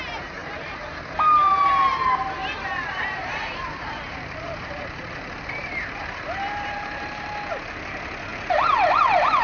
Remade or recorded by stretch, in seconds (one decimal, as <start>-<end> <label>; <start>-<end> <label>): 0.0-0.4 recorded; 0.4-0.9 remade; 0.9-2.4 recorded; 2.4-7.5 remade; 7.5-8.3 recorded; 8.3-9.0 remade; 9.0-9.4 recorded